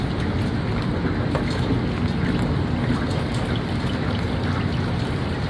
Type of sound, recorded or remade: recorded